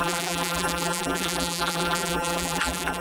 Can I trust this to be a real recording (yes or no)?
no